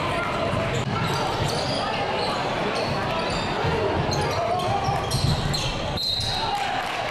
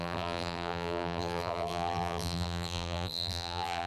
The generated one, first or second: second